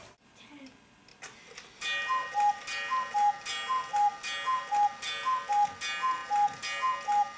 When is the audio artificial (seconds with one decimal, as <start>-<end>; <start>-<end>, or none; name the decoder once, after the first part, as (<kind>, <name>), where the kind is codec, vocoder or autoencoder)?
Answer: none